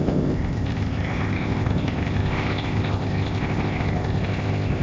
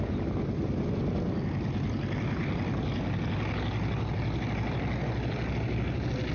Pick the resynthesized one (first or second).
first